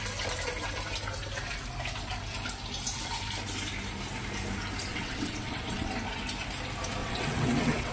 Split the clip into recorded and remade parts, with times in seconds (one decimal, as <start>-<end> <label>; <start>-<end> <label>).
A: 0.0-4.9 recorded; 4.9-5.9 remade; 5.9-7.0 recorded; 7.0-7.9 remade